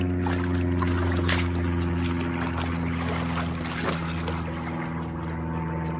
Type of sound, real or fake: real